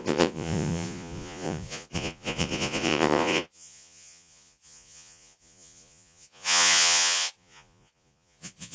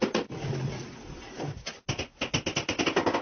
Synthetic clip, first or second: first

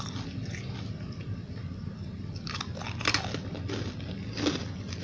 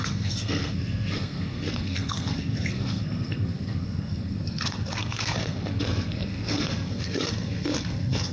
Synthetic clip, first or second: second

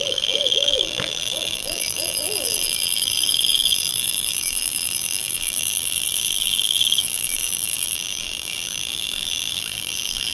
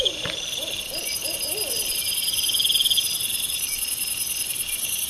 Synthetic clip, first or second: first